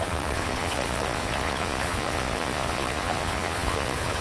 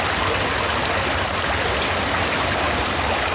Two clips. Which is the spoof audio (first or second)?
first